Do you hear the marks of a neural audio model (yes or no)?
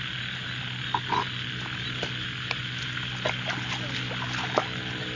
no